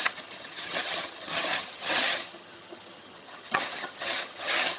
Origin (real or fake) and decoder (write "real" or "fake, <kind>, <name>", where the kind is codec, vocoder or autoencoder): fake, vocoder, HiFi-GAN